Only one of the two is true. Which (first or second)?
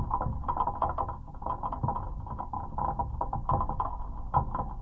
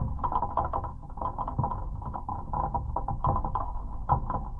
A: first